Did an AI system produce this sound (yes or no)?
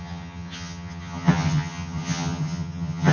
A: yes